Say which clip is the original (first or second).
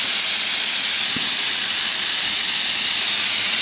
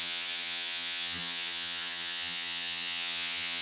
first